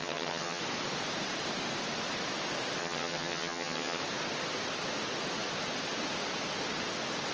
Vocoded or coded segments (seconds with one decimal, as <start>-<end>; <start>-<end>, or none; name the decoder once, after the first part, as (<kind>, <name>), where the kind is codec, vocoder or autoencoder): 0.0-0.6 (vocoder, HiFi-GAN); 2.8-4.0